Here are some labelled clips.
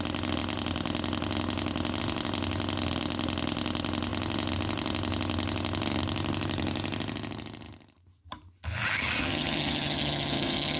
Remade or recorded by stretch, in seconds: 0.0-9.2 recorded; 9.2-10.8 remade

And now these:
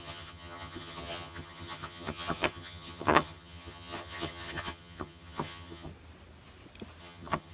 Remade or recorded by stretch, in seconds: 0.0-5.9 remade; 5.9-7.0 recorded; 7.0-7.5 remade

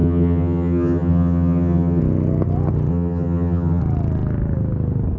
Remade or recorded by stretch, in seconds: 0.0-2.0 remade; 2.0-2.9 recorded; 2.9-3.8 remade; 3.8-5.2 recorded

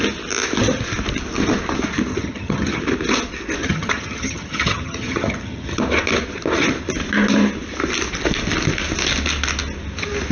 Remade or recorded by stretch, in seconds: 0.0-2.1 recorded; 2.1-2.8 remade; 2.8-3.6 recorded; 3.6-5.8 remade; 5.8-10.3 recorded

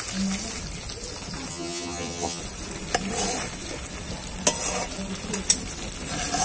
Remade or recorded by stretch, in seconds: 0.0-1.5 recorded; 1.5-2.4 remade; 2.4-6.4 recorded